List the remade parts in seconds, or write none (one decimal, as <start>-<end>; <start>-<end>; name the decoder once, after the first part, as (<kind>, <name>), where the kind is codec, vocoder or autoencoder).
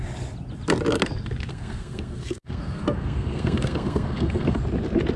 1.5-4.6 (codec, SNAC)